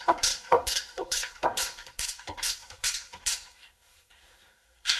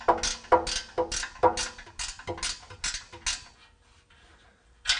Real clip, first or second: second